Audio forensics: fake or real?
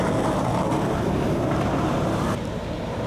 real